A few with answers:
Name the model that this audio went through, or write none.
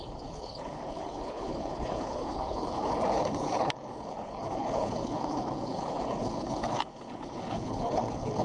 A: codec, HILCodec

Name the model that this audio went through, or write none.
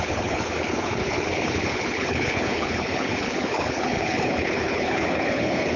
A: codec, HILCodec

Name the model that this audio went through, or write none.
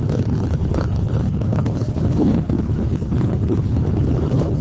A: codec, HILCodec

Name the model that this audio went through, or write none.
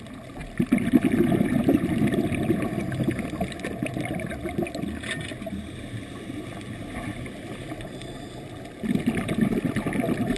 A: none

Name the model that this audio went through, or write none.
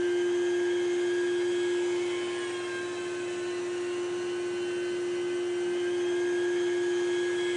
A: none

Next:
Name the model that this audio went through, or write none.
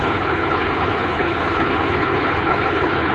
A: codec, HILCodec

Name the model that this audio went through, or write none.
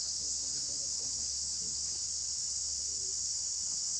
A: codec, HILCodec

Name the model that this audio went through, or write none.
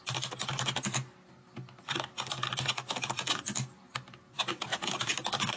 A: none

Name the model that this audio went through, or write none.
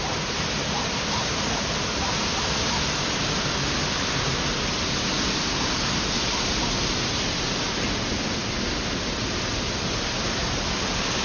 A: none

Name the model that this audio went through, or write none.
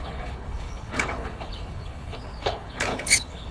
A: codec, HILCodec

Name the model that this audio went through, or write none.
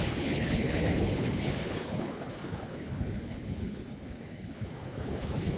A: codec, HILCodec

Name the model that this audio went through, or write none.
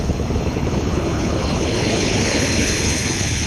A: codec, HILCodec